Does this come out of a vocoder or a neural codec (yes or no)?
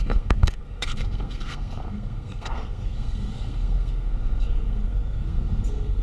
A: yes